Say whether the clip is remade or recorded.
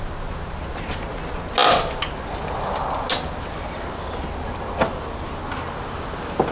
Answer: recorded